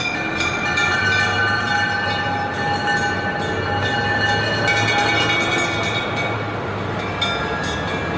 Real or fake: real